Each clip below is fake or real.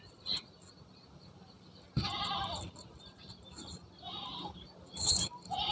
real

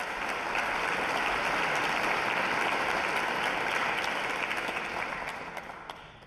real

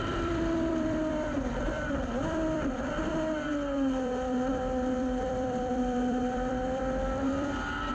fake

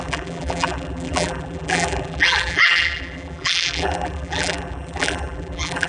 fake